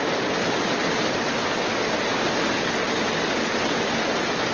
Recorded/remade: recorded